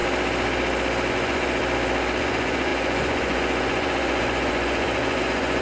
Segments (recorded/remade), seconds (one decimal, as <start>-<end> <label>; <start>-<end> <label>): 0.0-1.1 recorded; 1.1-1.6 remade; 1.6-2.2 recorded; 2.2-5.6 remade